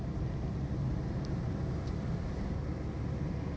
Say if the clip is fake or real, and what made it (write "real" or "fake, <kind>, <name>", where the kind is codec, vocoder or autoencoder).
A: real